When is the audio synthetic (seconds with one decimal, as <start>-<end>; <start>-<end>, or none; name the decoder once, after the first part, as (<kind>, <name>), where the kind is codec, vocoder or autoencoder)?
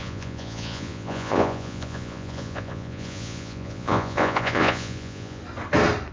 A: 0.0-5.4 (vocoder, Vocos)